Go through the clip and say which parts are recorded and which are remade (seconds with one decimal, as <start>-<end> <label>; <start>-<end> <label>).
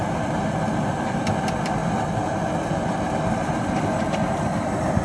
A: 0.0-0.8 remade; 0.8-5.0 recorded